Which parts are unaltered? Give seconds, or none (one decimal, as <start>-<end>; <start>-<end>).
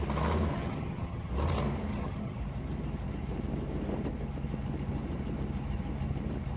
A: 0.0-0.5; 1.3-1.9; 2.4-6.6